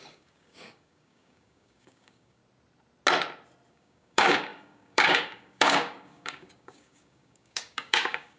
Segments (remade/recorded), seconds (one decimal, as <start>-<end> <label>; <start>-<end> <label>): 0.0-2.4 remade; 2.4-3.7 recorded; 3.7-8.4 remade